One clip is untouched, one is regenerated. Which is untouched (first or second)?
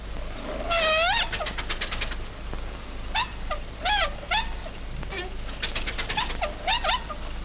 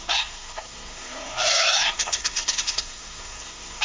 first